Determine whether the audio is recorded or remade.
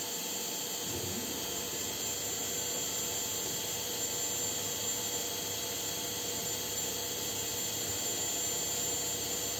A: recorded